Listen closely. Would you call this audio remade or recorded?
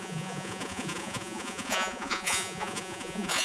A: remade